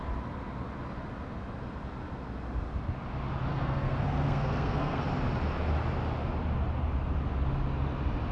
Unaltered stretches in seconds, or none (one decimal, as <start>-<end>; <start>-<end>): 0.0-3.5; 5.0-8.3